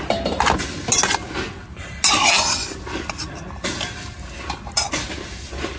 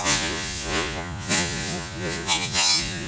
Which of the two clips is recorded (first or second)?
first